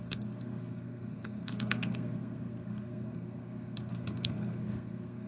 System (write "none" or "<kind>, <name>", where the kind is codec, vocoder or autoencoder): codec, SNAC